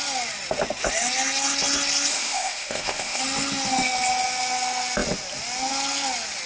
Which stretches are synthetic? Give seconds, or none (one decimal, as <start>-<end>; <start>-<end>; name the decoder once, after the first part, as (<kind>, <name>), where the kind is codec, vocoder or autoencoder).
2.1-3.2 (codec, ZipCodec)